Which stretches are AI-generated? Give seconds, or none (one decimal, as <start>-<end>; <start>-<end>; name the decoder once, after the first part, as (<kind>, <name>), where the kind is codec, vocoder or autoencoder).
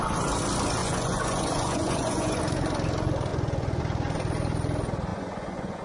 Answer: 0.8-2.4 (vocoder, Vocos); 3.3-3.8; 5.1-5.8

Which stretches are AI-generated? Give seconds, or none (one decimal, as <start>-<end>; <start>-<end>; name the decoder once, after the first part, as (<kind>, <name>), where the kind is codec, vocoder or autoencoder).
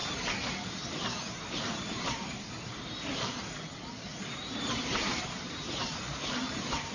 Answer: 1.4-2.7 (vocoder, BigVGAN v2); 4.0-6.9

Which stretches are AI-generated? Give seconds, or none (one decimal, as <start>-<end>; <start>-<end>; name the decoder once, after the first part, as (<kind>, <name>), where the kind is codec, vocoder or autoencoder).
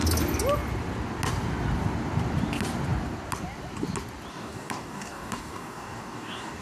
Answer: 4.3-6.6 (codec, DAC)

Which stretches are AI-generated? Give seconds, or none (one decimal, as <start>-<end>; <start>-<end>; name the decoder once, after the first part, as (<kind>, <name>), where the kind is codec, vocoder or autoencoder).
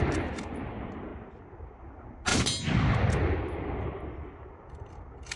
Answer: none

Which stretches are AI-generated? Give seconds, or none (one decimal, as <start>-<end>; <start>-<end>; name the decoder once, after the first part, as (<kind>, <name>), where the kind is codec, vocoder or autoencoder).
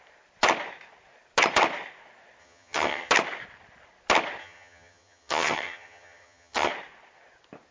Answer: 2.4-3.1 (vocoder, HiFi-GAN); 4.4-6.7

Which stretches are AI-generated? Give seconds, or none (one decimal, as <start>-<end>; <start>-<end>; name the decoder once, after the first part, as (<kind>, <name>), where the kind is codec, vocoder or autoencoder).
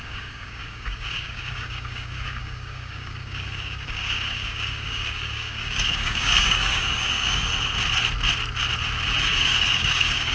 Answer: 0.0-7.5 (codec, DAC); 9.2-10.3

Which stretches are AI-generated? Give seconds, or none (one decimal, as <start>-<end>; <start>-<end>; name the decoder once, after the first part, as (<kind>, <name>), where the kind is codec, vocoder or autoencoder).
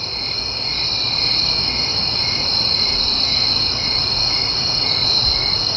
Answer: 1.9-5.8 (vocoder, Vocos)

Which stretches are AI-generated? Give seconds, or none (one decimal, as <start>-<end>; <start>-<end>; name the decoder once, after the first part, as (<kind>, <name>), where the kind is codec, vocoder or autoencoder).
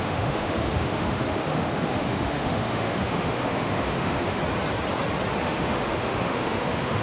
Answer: 0.0-4.4 (autoencoder, DAC-VAE); 5.4-7.0